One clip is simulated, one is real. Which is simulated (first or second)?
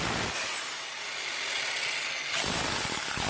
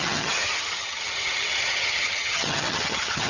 second